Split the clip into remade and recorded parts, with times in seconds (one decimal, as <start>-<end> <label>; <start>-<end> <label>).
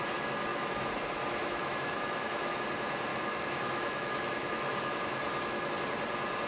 0.0-0.5 recorded; 0.5-2.6 remade; 2.6-3.1 recorded; 3.1-5.7 remade; 5.7-6.5 recorded